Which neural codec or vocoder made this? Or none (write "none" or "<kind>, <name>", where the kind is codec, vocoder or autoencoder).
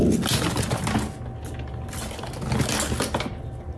none